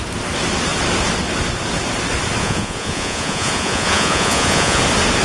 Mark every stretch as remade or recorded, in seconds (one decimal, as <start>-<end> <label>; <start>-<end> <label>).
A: 0.0-2.4 recorded; 2.4-4.8 remade; 4.8-5.2 recorded